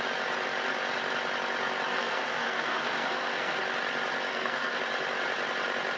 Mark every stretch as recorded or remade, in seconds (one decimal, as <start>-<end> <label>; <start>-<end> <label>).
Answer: 0.0-1.9 recorded; 1.9-3.6 remade; 3.6-4.3 recorded; 4.3-4.8 remade; 4.8-6.0 recorded